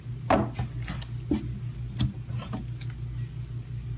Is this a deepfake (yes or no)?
no